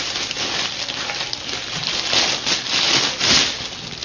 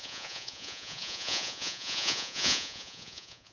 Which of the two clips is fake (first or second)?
second